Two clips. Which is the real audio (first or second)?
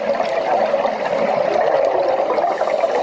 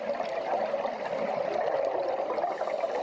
first